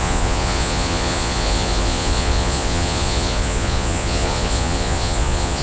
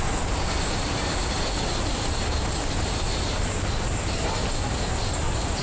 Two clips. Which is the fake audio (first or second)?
first